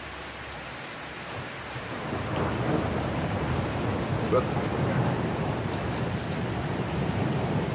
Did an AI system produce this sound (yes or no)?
yes